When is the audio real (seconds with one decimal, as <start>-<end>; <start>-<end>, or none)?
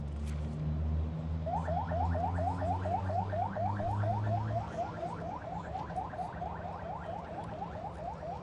0.0-3.0; 5.3-8.4